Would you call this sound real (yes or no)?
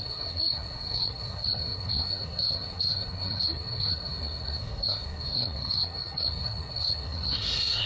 no